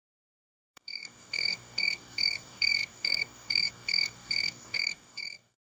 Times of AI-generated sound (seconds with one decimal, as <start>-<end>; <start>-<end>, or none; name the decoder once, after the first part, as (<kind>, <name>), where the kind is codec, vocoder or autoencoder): 0.0-5.6 (codec, DAC)